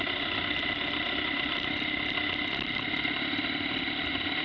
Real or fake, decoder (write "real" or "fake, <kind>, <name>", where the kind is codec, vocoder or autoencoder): real